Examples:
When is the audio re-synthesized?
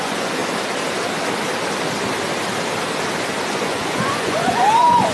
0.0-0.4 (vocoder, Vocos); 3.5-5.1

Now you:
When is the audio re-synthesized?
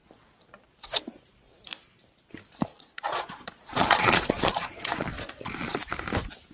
2.7-5.9 (vocoder, Vocos)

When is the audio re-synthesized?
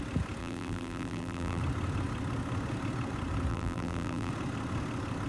0.4-1.6 (vocoder, BigVGAN v2); 3.5-4.3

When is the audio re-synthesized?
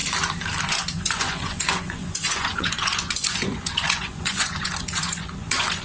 0.6-5.8 (vocoder, Vocos)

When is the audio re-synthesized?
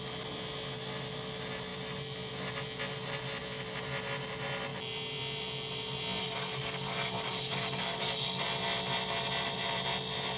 6.2-8.4 (codec, DAC)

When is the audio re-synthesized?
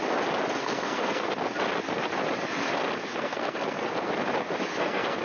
0.6-1.3 (codec, SNAC); 3.1-4.1; 4.7-5.2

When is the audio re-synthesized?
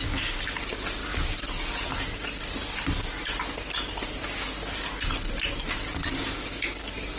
none